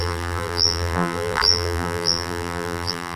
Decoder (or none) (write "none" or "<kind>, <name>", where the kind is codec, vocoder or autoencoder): vocoder, BigVGAN v2